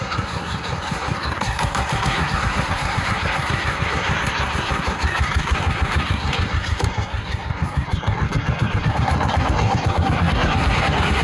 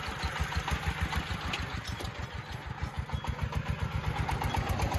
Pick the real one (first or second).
second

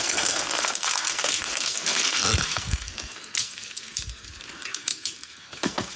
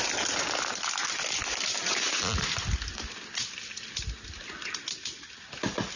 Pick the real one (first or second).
second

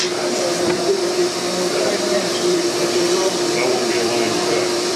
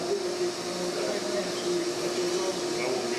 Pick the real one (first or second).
second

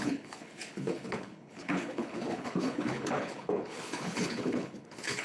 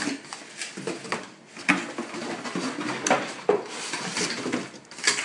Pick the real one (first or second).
second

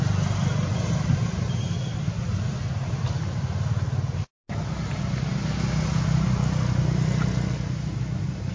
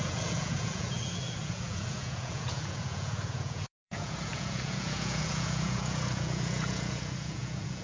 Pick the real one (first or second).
first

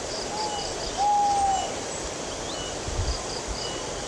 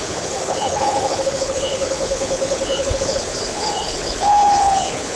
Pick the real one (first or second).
first